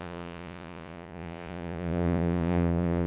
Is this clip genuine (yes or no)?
no